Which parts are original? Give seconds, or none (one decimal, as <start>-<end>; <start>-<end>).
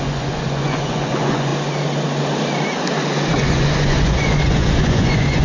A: 1.5-3.3